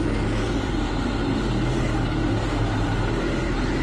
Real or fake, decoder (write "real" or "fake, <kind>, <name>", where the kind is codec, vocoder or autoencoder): real